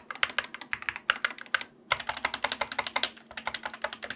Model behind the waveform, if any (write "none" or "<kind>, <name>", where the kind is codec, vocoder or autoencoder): none